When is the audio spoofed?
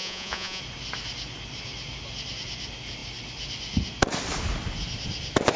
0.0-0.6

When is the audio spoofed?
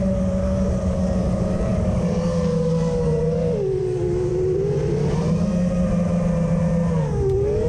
0.0-4.3; 6.9-7.7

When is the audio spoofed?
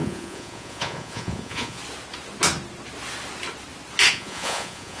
0.0-1.8; 4.1-5.0